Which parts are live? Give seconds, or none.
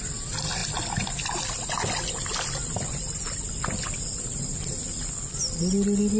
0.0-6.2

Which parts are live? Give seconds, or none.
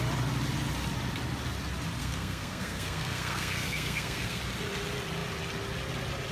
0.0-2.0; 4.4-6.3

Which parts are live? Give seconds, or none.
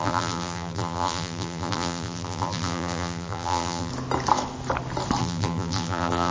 3.9-5.2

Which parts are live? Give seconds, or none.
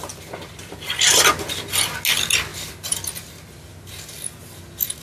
0.0-5.0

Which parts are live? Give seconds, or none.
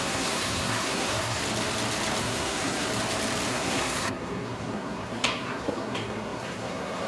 1.4-2.2; 2.9-3.5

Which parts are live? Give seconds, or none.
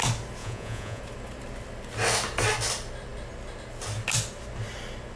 0.0-0.4; 1.0-5.2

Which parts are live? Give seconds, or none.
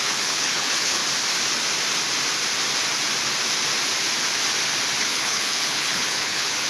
1.0-5.0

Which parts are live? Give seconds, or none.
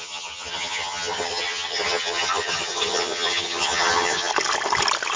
4.3-5.2